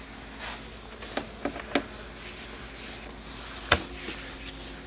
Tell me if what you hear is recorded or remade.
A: recorded